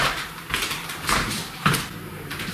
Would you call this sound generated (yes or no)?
yes